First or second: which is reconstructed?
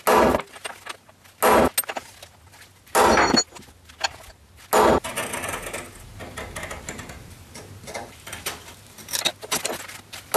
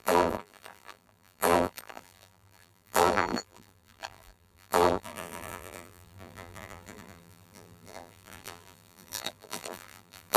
second